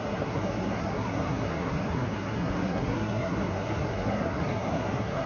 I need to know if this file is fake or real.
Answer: fake